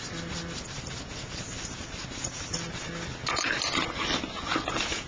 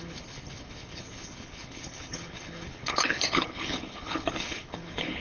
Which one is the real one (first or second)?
first